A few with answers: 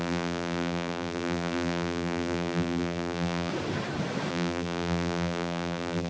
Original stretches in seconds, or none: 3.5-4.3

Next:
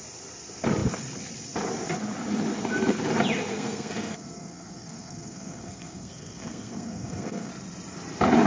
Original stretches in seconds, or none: 0.0-3.5; 7.5-8.5

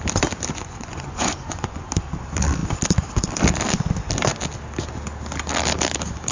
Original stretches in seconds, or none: 0.0-0.5; 1.9-6.3